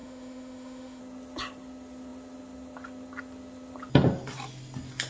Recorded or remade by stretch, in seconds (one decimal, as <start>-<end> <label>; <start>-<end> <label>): 0.0-1.0 remade; 1.0-5.1 recorded